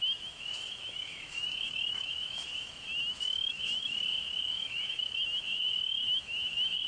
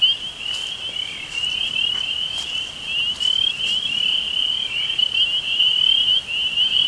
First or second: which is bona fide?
second